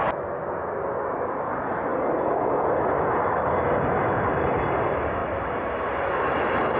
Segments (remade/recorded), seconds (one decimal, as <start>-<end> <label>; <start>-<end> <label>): 0.0-6.8 recorded